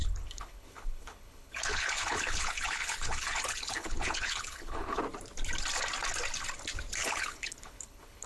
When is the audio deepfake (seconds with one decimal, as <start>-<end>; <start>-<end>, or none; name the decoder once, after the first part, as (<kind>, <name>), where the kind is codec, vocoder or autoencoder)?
0.0-5.0 (codec, HILCodec); 7.0-8.3